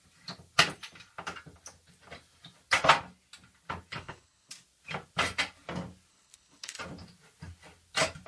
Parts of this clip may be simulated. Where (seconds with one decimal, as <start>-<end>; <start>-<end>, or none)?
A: 3.9-4.5; 6.1-6.8